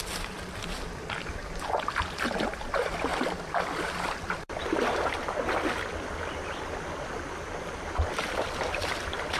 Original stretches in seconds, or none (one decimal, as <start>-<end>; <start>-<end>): 0.0-3.1; 5.2-8.3

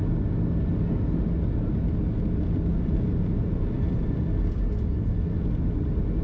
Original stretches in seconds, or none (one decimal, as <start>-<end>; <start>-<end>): 0.0-2.7; 4.2-6.2

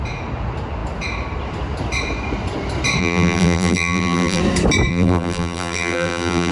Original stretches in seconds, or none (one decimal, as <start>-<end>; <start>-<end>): 0.0-3.0; 4.4-4.9